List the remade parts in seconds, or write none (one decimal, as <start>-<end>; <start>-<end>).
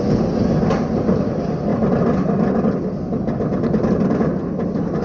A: 1.7-5.0